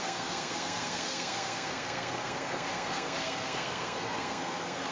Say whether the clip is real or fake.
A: fake